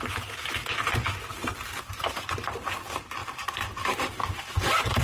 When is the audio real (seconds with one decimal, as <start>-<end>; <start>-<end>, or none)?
none